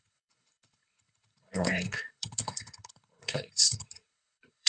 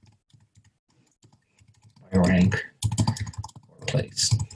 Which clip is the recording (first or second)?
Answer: second